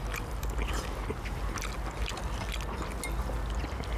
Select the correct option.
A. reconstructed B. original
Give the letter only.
B